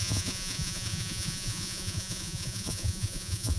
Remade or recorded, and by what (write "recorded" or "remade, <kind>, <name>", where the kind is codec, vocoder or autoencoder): remade, vocoder, Vocos